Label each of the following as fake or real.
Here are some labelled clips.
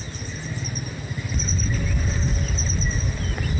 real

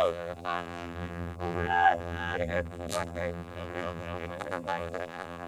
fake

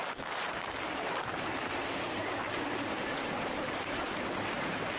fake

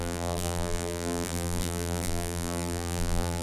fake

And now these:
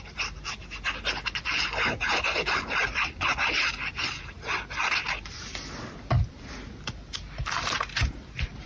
real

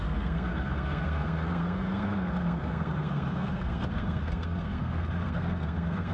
fake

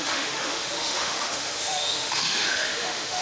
fake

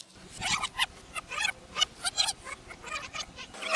real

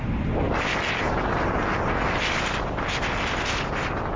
real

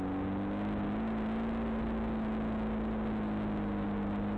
real